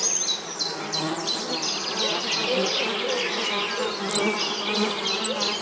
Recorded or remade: recorded